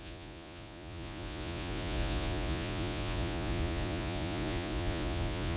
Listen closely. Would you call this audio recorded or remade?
remade